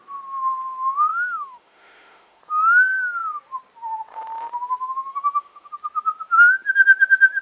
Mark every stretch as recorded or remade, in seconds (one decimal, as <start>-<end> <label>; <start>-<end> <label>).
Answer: 0.0-1.1 recorded; 1.1-2.4 remade; 2.4-5.1 recorded; 5.1-5.7 remade; 5.7-7.4 recorded

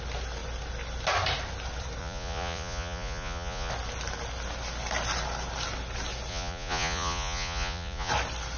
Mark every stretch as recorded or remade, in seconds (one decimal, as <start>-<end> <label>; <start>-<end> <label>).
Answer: 0.0-2.0 recorded; 2.0-3.7 remade; 3.7-6.3 recorded; 6.3-8.1 remade; 8.1-8.6 recorded

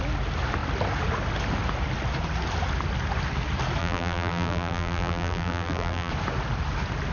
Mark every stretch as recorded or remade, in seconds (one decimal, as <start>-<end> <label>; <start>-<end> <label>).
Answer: 0.0-3.8 recorded; 3.8-6.1 remade; 6.1-7.1 recorded

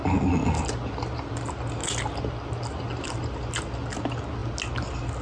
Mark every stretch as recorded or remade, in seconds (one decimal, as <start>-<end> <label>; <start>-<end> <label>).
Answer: 0.0-5.2 recorded

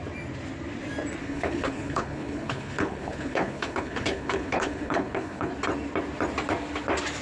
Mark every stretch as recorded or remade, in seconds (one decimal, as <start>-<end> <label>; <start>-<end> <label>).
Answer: 0.0-1.2 recorded; 1.2-5.5 remade; 5.5-7.2 recorded

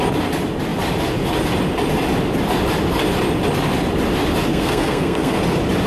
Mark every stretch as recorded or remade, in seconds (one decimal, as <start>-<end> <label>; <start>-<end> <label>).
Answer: 0.0-4.5 recorded; 4.5-5.4 remade; 5.4-5.9 recorded

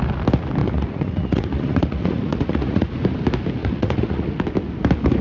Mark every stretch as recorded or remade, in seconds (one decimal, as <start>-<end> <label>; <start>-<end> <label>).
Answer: 0.0-0.6 recorded; 0.6-2.9 remade; 2.9-3.6 recorded; 3.6-4.3 remade; 4.3-5.2 recorded